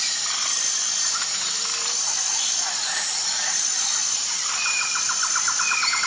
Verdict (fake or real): fake